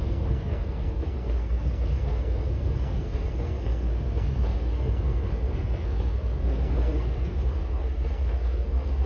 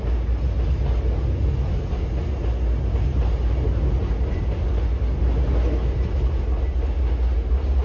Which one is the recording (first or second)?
second